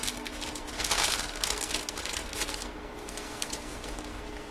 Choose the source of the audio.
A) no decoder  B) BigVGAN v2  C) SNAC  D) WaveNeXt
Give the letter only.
C